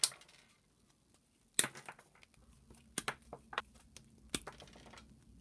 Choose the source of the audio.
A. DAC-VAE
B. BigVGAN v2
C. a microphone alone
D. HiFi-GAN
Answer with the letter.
C